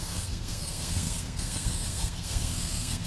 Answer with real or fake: fake